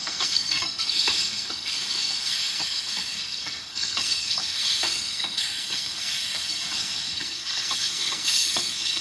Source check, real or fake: fake